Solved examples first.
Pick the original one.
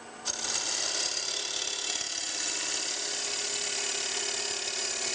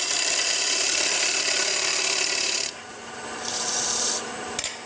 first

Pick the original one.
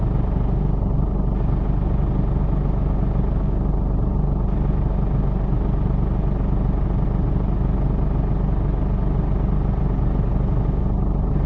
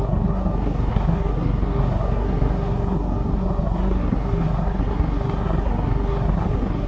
first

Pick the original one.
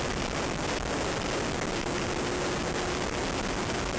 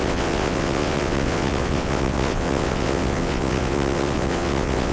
first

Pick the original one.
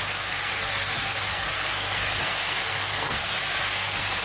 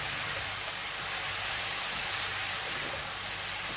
second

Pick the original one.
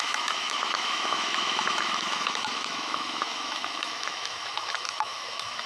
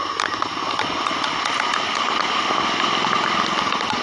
second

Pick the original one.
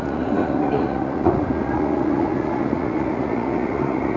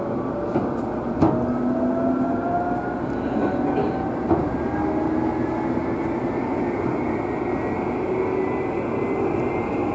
second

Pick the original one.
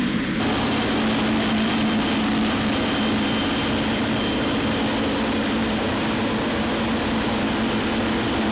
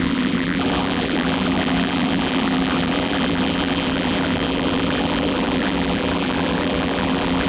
first